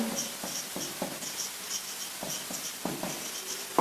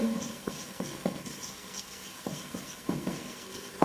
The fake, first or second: second